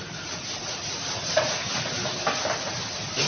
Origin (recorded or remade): recorded